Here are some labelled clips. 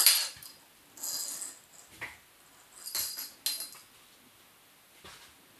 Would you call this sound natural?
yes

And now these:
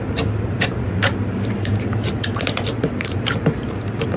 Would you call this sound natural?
no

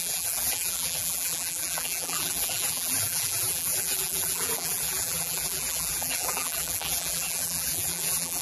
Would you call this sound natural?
no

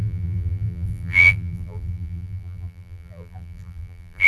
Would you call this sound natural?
no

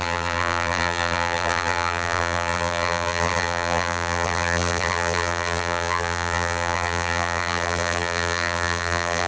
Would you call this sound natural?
no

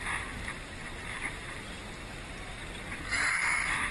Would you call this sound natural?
no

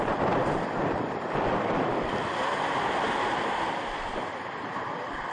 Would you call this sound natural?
no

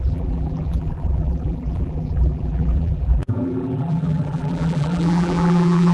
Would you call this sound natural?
no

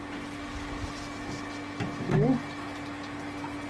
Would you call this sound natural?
yes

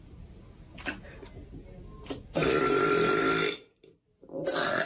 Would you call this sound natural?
yes